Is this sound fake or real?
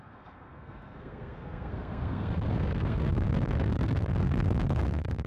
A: fake